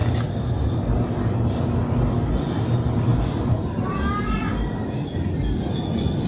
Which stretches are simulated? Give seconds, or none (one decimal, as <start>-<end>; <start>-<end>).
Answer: 3.1-4.1